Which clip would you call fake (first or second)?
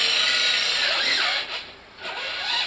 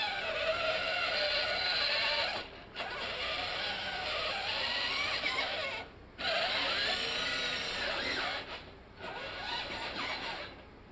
first